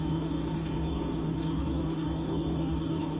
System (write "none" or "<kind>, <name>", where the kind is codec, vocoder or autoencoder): codec, DAC